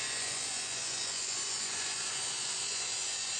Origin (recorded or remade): remade